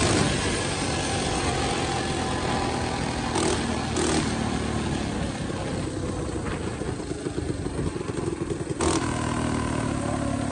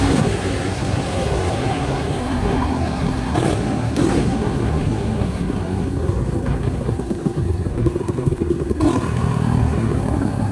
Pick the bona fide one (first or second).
first